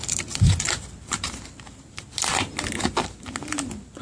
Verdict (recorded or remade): recorded